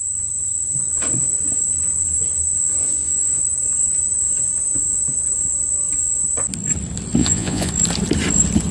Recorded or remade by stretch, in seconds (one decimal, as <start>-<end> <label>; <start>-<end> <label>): 0.0-2.7 recorded; 2.7-3.4 remade; 3.4-7.2 recorded; 7.2-7.7 remade; 7.7-8.7 recorded

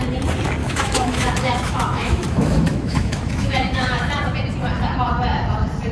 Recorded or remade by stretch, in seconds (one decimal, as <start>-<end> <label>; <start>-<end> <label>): 0.0-0.6 recorded; 0.6-4.1 remade; 4.1-5.9 recorded